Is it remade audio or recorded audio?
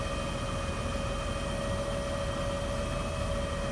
recorded